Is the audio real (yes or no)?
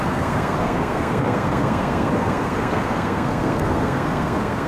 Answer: no